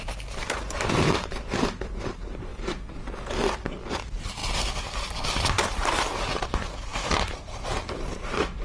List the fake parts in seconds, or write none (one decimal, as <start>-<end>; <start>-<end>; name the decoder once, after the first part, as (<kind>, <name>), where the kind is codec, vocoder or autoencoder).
0.0-2.5 (vocoder, BigVGAN v2); 3.9-4.4; 5.3-8.6